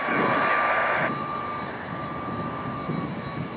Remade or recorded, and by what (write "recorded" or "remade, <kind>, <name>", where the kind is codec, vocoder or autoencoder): recorded